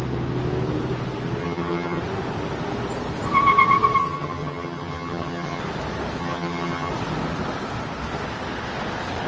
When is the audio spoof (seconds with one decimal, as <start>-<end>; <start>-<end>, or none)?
1.4-2.0; 4.0-5.6; 6.2-6.9